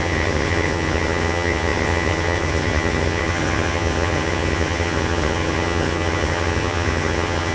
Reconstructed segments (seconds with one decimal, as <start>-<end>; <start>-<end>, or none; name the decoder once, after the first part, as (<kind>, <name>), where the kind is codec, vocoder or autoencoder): 0.0-7.5 (vocoder, HiFi-GAN)